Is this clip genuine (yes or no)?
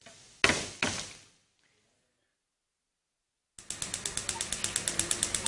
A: yes